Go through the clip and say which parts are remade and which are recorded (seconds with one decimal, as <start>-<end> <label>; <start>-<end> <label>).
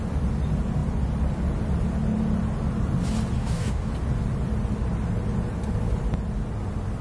0.0-3.4 recorded; 3.4-3.9 remade; 3.9-7.0 recorded